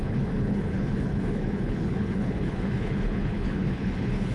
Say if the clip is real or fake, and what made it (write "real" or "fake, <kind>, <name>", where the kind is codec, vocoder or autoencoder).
fake, codec, HILCodec